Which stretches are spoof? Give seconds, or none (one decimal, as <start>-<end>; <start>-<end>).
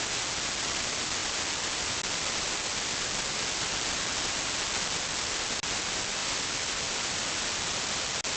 0.0-1.2; 2.1-6.2; 7.1-8.4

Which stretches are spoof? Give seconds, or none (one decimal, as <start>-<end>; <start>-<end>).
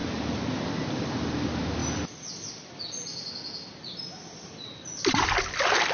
none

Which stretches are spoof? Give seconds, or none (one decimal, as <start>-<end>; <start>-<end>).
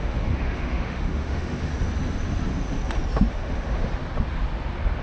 0.0-1.7; 3.3-3.9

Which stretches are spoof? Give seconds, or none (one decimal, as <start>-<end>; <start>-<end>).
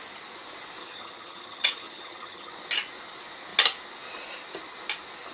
0.8-2.5